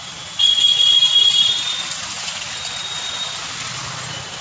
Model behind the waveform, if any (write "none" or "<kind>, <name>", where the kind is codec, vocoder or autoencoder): none